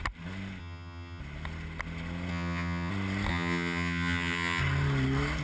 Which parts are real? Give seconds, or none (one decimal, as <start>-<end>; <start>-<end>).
0.0-0.6; 1.2-2.3; 2.9-3.3; 4.6-5.4